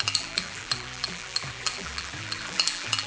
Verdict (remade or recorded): remade